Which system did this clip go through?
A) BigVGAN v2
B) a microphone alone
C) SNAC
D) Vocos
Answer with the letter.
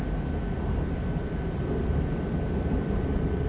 B